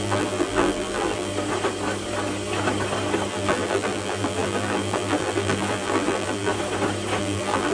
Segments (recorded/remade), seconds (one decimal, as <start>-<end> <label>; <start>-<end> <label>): 0.0-1.3 remade; 1.3-3.3 recorded; 3.3-6.5 remade; 6.5-7.2 recorded; 7.2-7.7 remade